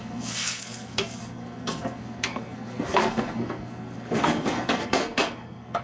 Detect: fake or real fake